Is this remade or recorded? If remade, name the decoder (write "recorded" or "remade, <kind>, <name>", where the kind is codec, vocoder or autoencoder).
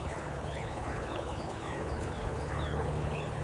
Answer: remade, codec, HILCodec